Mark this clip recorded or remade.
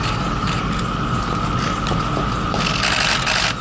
recorded